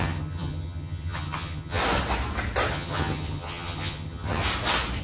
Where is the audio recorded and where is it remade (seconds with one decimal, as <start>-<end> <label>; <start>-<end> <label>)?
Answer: 0.0-1.8 remade; 1.8-2.7 recorded; 2.7-4.4 remade; 4.4-5.0 recorded

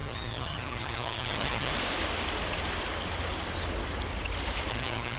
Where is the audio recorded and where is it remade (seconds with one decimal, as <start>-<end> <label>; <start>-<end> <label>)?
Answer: 0.0-1.7 remade; 1.7-4.7 recorded; 4.7-5.2 remade

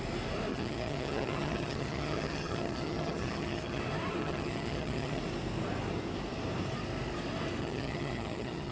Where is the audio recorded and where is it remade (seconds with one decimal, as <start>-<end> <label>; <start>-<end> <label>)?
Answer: 0.0-0.5 recorded; 0.5-3.8 remade; 3.8-4.2 recorded; 4.2-5.2 remade; 5.2-7.6 recorded; 7.6-8.7 remade

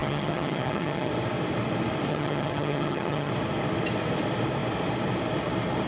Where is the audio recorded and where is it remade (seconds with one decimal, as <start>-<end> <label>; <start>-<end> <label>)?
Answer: 0.0-1.1 remade; 1.1-2.1 recorded; 2.1-3.3 remade; 3.3-5.9 recorded

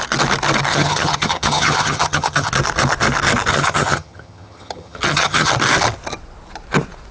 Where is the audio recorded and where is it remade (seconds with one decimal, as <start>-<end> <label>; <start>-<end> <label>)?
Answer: 0.0-0.7 recorded; 0.7-2.5 remade; 2.5-3.5 recorded; 3.5-5.5 remade; 5.5-7.1 recorded

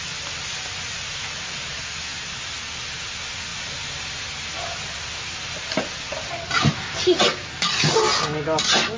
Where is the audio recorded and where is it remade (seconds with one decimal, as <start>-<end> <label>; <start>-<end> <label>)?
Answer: 0.0-9.0 recorded